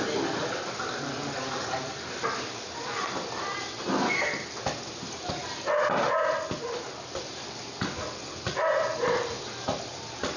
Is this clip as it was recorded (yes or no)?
yes